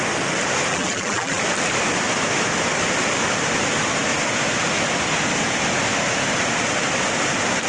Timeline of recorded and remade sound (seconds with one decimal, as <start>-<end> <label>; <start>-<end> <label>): 0.0-0.7 recorded; 0.7-1.4 remade; 1.4-7.7 recorded